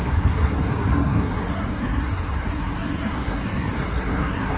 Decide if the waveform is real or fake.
fake